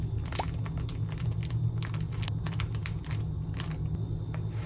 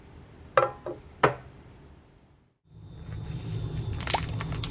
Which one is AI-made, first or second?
second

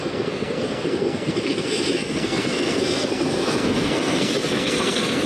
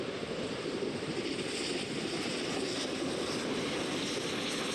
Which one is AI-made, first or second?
first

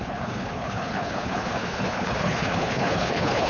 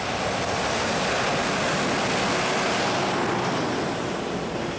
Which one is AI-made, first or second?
first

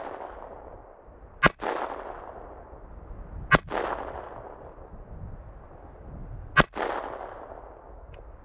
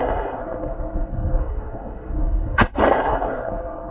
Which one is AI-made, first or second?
second